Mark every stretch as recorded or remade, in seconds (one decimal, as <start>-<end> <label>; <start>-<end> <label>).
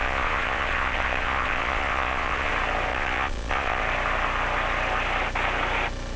0.0-2.5 remade; 2.5-2.9 recorded; 2.9-3.8 remade; 3.8-6.2 recorded